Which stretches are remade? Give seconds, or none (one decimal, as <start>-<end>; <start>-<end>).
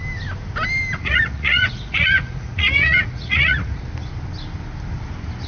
1.0-3.8